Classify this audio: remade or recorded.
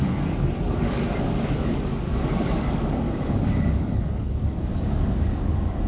remade